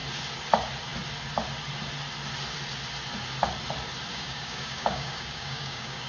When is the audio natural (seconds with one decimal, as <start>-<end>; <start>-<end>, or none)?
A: 0.0-4.1

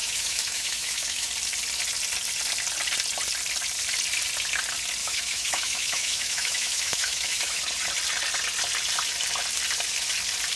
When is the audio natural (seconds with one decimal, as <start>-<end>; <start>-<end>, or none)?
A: 1.3-5.0; 7.6-10.6

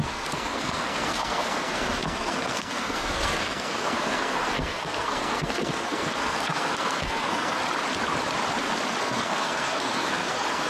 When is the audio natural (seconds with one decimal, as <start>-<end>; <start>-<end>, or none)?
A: 7.6-9.0

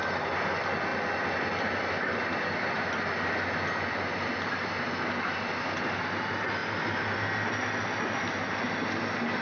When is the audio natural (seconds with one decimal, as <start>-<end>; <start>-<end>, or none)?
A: 0.0-9.4

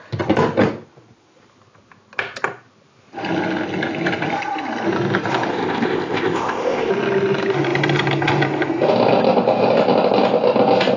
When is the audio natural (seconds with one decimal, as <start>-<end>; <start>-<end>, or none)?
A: 0.0-5.5; 6.9-11.0

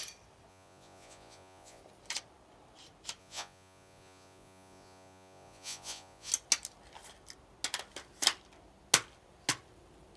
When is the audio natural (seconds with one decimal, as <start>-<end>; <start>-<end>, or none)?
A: 0.0-0.5; 1.8-3.2; 6.3-10.2

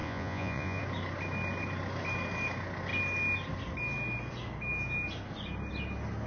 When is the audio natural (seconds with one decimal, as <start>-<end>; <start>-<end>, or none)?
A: 0.8-6.3

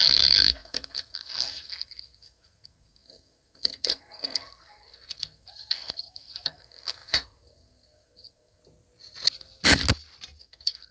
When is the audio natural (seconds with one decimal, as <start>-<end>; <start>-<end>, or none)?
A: 8.6-10.4